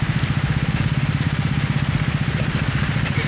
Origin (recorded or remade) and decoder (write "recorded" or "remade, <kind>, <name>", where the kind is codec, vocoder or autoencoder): recorded